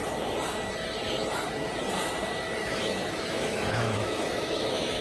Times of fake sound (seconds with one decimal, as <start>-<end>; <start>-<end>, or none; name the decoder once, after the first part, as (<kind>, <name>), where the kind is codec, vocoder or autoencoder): 2.6-5.0 (autoencoder, DAC-VAE)